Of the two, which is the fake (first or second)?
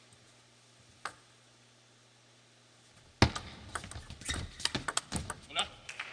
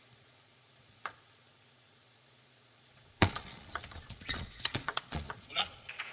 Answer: second